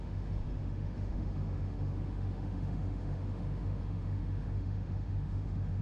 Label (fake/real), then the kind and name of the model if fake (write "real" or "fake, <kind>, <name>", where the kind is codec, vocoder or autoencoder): fake, autoencoder, DAC-VAE